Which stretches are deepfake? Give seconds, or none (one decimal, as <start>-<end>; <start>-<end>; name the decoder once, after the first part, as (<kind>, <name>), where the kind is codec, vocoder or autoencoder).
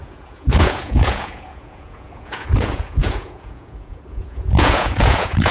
0.0-5.5 (vocoder, Vocos)